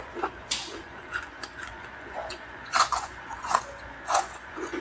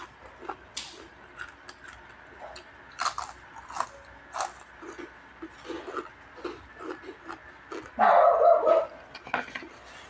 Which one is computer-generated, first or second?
first